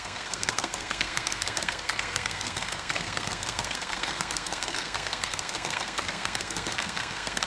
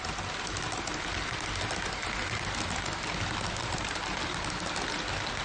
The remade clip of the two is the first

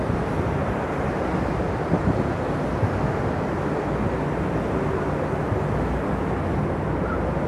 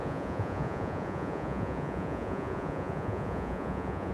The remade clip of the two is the second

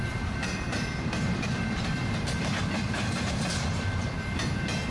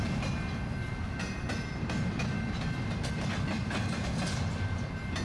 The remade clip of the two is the first